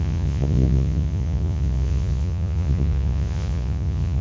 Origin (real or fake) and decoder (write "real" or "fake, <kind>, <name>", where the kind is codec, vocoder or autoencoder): fake, vocoder, Vocos